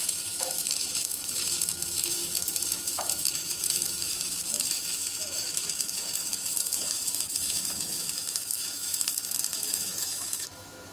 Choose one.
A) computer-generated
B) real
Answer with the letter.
A